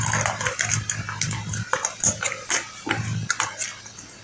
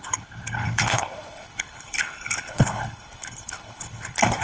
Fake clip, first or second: second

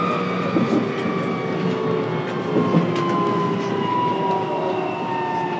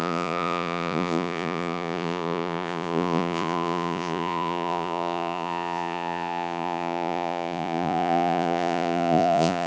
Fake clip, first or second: second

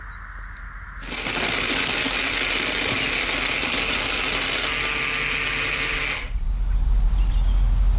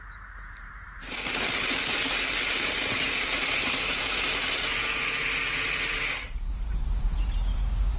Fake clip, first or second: second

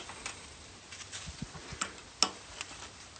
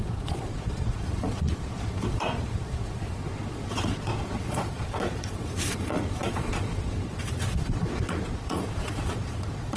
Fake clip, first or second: second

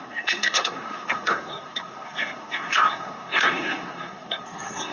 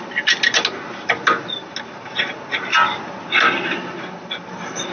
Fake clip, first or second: first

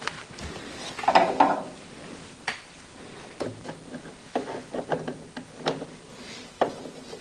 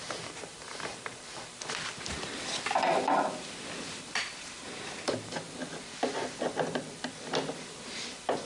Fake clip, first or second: second